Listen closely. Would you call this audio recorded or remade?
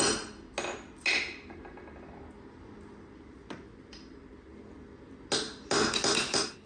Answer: recorded